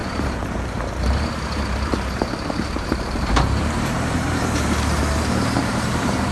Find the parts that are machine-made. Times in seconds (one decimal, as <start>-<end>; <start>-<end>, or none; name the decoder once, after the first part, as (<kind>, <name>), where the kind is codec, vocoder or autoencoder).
0.0-6.3 (vocoder, BigVGAN v2)